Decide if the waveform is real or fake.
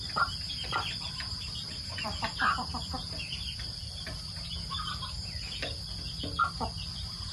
fake